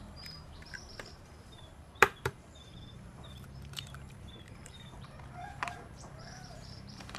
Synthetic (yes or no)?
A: yes